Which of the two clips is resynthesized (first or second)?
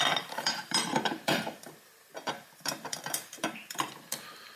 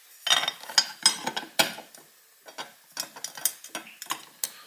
first